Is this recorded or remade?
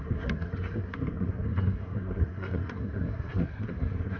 remade